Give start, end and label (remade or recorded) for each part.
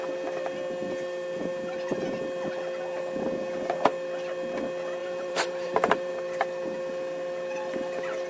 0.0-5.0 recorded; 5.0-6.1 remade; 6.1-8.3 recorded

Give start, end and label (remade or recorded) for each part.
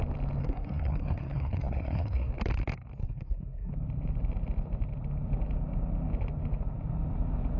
0.0-0.4 recorded; 0.4-2.3 remade; 2.3-3.0 recorded; 3.0-3.7 remade; 3.7-7.6 recorded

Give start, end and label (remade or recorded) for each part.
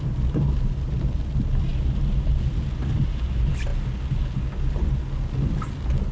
0.0-6.1 recorded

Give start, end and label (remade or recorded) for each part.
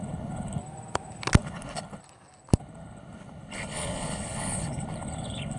0.0-0.6 remade; 0.6-1.4 recorded; 1.4-2.0 remade; 2.0-2.6 recorded; 2.6-5.6 remade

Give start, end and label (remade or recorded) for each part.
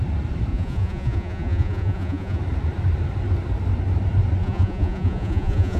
0.0-0.5 recorded; 0.5-2.4 remade; 2.4-4.4 recorded; 4.4-5.8 remade